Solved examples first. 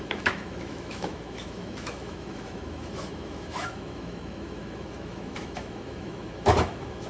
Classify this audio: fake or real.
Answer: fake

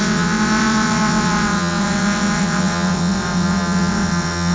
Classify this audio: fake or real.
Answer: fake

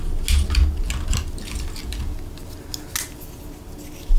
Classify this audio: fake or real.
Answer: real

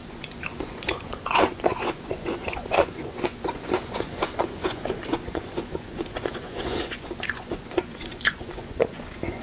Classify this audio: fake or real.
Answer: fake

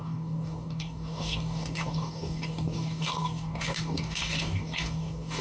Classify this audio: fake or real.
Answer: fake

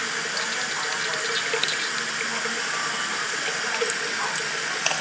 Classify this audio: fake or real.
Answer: real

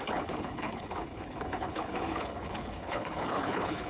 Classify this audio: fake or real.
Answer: fake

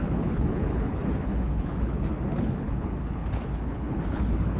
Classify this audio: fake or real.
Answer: fake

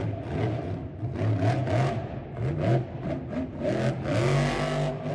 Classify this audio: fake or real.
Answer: real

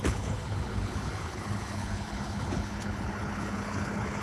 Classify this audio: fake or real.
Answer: fake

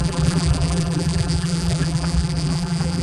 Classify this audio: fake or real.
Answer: fake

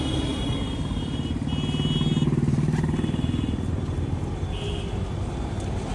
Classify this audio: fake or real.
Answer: real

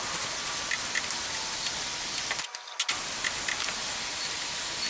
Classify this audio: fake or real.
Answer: real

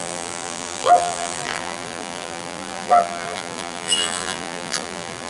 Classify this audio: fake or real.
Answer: fake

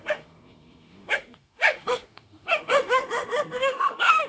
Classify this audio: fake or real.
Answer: fake